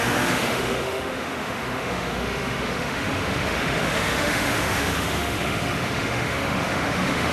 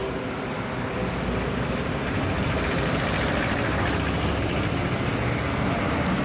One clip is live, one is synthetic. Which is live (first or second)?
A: second